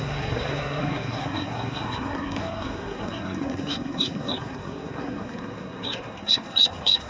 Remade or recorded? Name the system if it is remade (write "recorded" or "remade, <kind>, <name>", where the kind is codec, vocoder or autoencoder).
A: remade, codec, SNAC